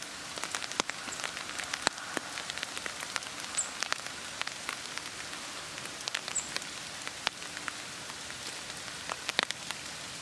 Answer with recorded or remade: recorded